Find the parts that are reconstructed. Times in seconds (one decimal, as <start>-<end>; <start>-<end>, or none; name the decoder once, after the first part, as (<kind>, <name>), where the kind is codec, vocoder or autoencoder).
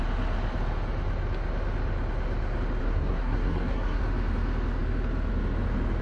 2.8-4.0 (codec, SNAC)